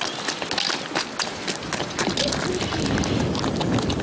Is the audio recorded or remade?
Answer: recorded